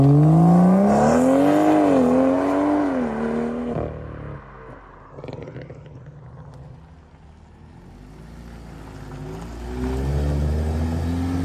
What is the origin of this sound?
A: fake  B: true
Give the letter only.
B